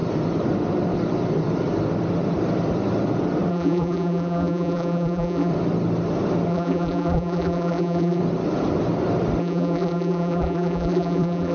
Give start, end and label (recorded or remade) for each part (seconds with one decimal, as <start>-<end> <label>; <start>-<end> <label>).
0.0-3.5 recorded; 3.5-5.5 remade; 5.5-6.5 recorded; 6.5-8.2 remade; 8.2-9.4 recorded; 9.4-11.5 remade